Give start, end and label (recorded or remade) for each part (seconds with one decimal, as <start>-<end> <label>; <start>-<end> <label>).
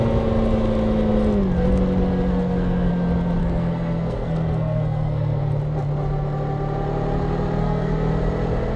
0.0-2.3 recorded; 2.3-2.9 remade; 2.9-3.4 recorded; 3.4-5.4 remade; 5.4-7.6 recorded; 7.6-8.1 remade; 8.1-8.8 recorded